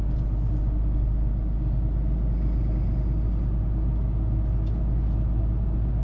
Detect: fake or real real